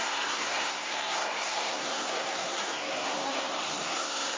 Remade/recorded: remade